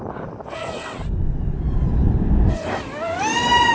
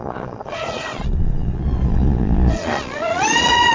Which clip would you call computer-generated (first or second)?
second